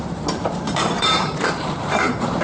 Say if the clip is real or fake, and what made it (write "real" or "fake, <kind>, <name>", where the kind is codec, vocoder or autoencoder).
fake, vocoder, BigVGAN v2